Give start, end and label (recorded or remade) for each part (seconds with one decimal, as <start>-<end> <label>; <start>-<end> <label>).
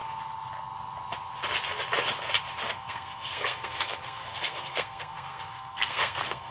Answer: 0.0-2.7 recorded; 2.7-6.5 remade